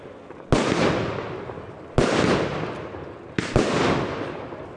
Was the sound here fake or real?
real